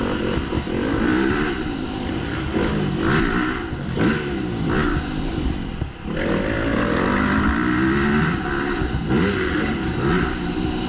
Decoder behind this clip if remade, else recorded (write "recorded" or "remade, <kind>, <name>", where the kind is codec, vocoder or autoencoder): recorded